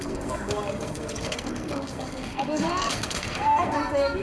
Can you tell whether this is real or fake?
fake